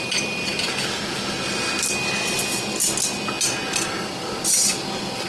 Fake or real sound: real